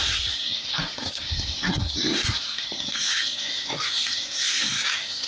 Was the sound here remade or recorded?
remade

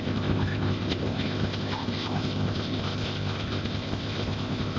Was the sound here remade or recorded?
remade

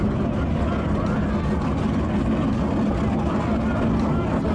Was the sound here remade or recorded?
recorded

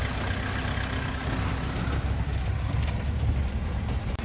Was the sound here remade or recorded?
recorded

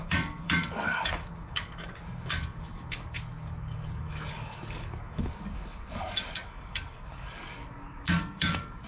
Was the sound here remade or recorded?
remade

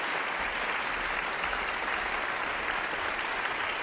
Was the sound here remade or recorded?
recorded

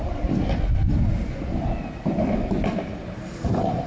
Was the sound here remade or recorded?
recorded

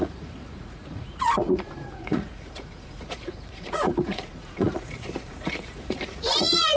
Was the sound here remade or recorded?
remade